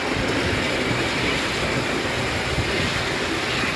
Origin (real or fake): real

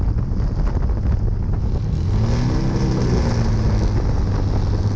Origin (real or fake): real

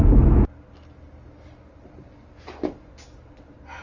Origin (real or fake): real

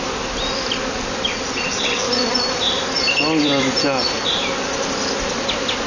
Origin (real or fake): real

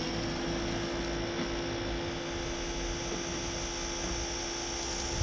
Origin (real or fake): real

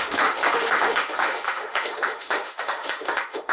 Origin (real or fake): fake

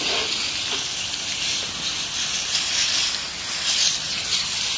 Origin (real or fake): real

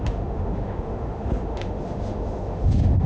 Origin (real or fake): fake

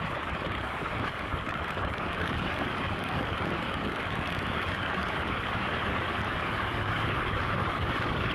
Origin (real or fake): fake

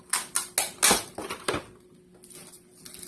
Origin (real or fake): real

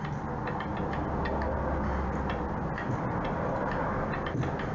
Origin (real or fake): real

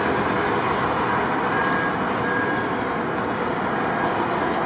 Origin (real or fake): real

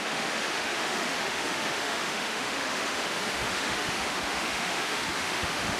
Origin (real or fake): fake